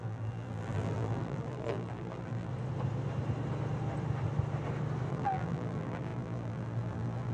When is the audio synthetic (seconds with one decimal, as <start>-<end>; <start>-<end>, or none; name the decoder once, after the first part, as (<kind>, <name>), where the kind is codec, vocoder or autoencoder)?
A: 0.0-2.5 (vocoder, BigVGAN v2); 5.1-7.3